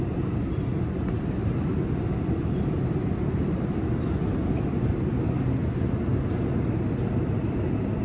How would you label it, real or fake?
real